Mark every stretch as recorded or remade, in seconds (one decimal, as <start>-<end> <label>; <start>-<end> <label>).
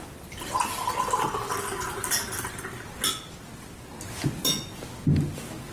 0.0-5.7 recorded